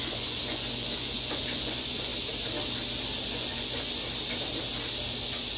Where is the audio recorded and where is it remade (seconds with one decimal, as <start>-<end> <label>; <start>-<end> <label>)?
0.0-2.1 remade; 2.1-3.3 recorded; 3.3-3.9 remade; 3.9-5.6 recorded

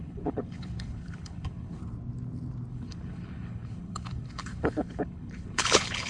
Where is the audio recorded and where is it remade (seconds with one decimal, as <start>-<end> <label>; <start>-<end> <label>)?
0.0-1.8 remade; 1.8-2.7 recorded; 2.7-6.1 remade

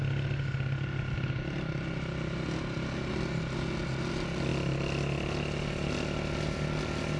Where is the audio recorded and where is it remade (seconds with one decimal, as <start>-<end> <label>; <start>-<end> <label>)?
0.0-7.2 recorded

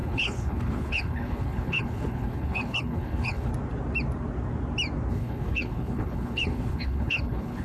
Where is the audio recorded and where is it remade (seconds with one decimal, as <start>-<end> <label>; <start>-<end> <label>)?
0.0-3.5 remade; 3.5-5.1 recorded; 5.1-7.6 remade

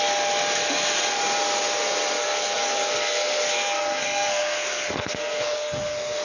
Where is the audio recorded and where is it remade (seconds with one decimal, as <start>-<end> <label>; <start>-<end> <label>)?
0.0-2.2 recorded; 2.2-6.2 remade

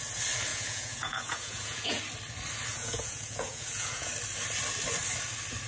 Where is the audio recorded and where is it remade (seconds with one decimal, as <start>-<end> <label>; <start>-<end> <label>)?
0.0-0.5 recorded; 0.5-2.0 remade; 2.0-2.7 recorded; 2.7-4.1 remade; 4.1-5.7 recorded

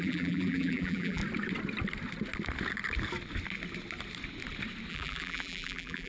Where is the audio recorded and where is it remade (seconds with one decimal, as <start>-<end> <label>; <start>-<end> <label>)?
0.0-1.2 remade; 1.2-4.9 recorded; 4.9-6.1 remade